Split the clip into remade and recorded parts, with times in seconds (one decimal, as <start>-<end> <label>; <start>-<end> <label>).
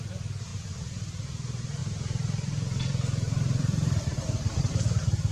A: 0.0-0.5 recorded; 0.5-1.1 remade; 1.1-1.8 recorded; 1.8-4.6 remade; 4.6-5.3 recorded